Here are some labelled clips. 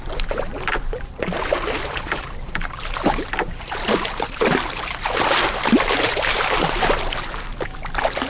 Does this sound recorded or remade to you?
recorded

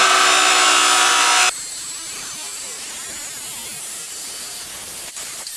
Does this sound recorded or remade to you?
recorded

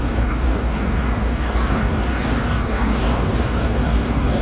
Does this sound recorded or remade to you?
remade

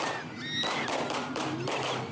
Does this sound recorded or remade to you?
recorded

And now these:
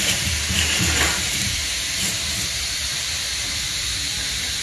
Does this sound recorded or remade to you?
remade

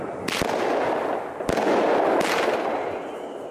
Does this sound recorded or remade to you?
recorded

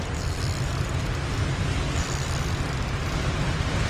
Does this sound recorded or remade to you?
recorded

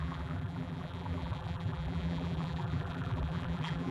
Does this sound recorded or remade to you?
remade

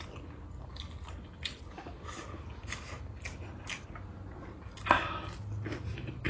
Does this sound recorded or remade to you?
recorded